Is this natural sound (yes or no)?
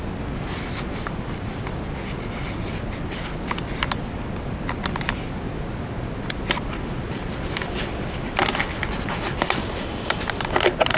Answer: yes